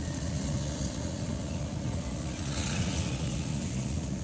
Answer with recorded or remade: remade